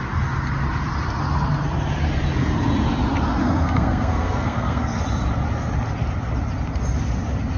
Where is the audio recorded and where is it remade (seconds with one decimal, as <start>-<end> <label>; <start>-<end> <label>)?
0.0-3.4 recorded; 3.4-5.0 remade; 5.0-7.6 recorded